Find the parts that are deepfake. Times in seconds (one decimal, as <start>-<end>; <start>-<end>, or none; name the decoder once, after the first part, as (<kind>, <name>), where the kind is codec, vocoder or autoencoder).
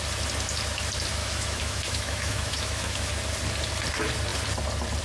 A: 1.2-3.1 (autoencoder, DAC-VAE)